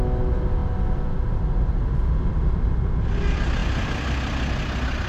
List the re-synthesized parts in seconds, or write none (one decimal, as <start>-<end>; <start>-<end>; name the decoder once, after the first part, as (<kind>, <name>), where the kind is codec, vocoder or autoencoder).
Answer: none

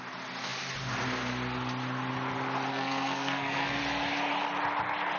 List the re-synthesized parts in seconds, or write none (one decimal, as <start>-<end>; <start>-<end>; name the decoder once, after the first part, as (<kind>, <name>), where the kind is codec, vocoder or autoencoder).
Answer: 2.7-3.8 (codec, SNAC)

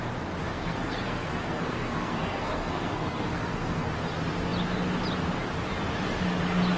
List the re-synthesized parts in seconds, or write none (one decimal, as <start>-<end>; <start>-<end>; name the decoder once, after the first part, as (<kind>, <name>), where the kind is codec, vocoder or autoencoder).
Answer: 0.5-3.9 (codec, SNAC)